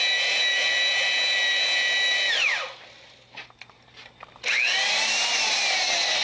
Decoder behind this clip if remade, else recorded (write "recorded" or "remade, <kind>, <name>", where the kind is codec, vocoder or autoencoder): recorded